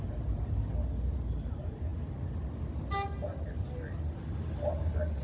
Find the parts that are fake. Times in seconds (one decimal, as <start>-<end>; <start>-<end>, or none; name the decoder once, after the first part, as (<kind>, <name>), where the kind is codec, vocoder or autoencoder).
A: none